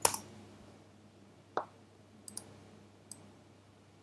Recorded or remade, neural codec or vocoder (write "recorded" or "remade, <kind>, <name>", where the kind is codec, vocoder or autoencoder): recorded